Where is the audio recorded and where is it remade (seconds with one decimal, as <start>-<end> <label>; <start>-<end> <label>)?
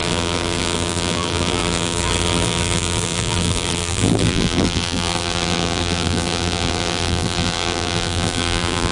0.0-8.9 remade